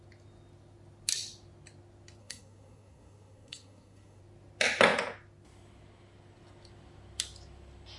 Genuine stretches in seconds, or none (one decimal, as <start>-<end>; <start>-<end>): 0.0-2.2; 4.2-8.0